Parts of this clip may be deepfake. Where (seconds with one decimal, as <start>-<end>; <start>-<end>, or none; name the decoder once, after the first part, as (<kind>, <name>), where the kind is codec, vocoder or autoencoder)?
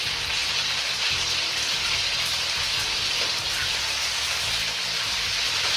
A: 0.4-3.1 (vocoder, BigVGAN v2)